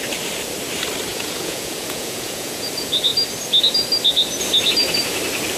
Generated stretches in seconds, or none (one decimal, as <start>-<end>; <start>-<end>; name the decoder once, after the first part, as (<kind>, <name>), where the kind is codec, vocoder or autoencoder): 1.1-2.7 (vocoder, Vocos)